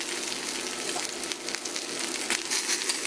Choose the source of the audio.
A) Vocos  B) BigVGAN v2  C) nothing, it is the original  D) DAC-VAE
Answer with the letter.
C